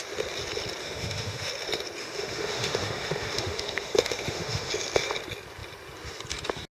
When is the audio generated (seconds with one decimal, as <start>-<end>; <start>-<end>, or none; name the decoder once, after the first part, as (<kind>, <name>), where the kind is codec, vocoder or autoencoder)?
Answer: 0.8-1.5 (autoencoder, DAC-VAE); 2.0-4.7

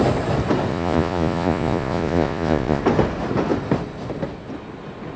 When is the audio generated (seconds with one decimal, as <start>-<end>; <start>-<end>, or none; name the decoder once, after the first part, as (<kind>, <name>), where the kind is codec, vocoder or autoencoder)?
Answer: 0.7-2.8 (vocoder, Vocos)

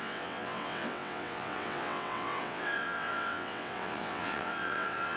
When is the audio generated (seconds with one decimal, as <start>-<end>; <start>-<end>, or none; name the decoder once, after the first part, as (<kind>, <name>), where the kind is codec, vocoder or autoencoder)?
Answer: 0.0-5.2 (vocoder, WaveNeXt)

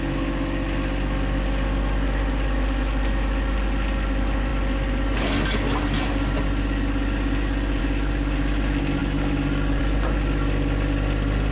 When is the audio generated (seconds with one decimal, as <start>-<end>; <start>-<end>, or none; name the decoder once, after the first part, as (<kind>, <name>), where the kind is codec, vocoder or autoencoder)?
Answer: none

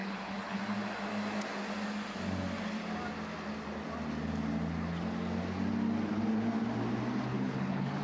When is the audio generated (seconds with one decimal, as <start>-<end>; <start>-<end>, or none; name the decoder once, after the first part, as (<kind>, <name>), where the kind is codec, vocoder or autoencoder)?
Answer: 0.0-0.6 (codec, HILCodec); 7.3-8.0

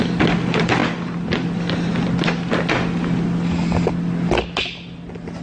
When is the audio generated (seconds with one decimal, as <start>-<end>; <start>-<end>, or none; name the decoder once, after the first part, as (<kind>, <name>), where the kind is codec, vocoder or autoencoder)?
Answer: none

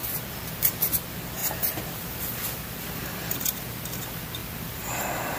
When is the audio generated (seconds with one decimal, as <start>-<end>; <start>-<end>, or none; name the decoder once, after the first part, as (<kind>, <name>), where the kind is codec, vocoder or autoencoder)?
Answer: 0.0-0.6 (vocoder, BigVGAN v2); 1.4-4.0; 4.4-5.4